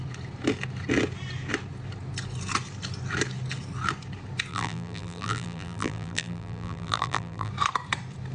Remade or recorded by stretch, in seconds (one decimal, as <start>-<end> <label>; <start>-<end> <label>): 0.0-4.5 recorded; 4.5-7.5 remade; 7.5-8.3 recorded